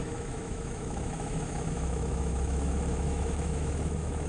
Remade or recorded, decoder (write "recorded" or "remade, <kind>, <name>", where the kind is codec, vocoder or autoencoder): remade, autoencoder, DAC-VAE